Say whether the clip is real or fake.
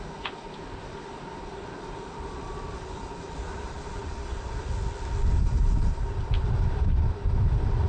real